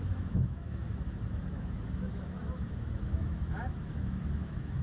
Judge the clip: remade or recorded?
remade